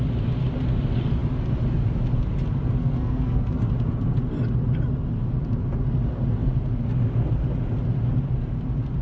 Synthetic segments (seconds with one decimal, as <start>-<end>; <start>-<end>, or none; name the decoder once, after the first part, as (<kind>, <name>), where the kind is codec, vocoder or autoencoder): 2.8-3.7 (codec, SNAC)